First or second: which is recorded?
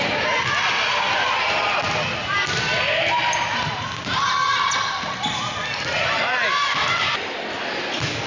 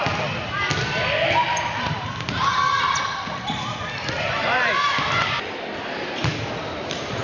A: first